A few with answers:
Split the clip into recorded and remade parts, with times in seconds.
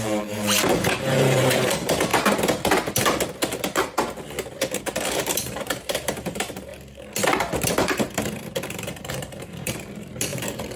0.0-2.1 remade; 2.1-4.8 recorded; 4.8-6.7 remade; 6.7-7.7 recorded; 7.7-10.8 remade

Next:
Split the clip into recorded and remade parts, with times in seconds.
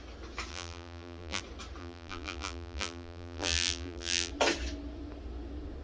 0.0-0.5 recorded; 0.5-1.4 remade; 1.4-1.8 recorded; 1.8-4.3 remade; 4.3-5.8 recorded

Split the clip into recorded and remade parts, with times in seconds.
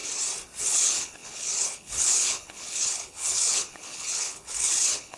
0.0-0.6 recorded; 0.6-5.2 remade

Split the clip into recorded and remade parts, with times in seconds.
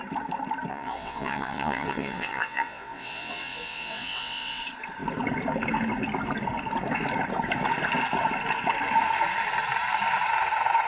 0.0-0.7 recorded; 0.7-4.6 remade; 4.6-10.9 recorded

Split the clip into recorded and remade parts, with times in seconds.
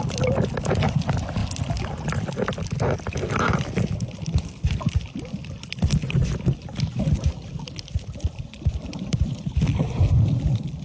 0.0-1.4 remade; 1.4-4.4 recorded; 4.4-6.2 remade; 6.2-8.0 recorded; 8.0-10.8 remade